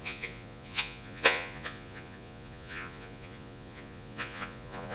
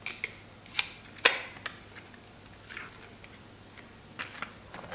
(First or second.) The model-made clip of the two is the first